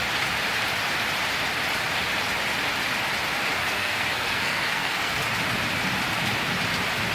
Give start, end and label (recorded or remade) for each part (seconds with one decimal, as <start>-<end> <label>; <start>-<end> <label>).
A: 0.0-3.5 recorded; 3.5-5.2 remade; 5.2-7.1 recorded

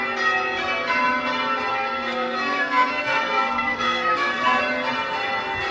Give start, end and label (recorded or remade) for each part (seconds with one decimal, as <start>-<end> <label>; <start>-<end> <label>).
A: 0.0-1.7 recorded; 1.7-4.6 remade; 4.6-5.7 recorded

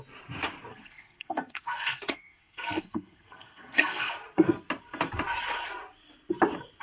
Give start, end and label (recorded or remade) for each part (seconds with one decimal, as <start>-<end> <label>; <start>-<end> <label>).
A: 0.0-0.7 recorded; 0.7-4.1 remade; 4.1-6.8 recorded